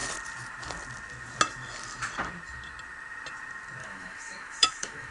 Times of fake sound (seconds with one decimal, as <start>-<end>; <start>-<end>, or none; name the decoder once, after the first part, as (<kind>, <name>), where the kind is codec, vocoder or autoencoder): 3.8-5.1 (autoencoder, DAC-VAE)